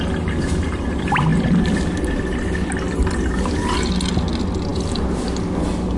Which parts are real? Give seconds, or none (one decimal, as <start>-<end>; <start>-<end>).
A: 0.0-4.7; 5.2-6.0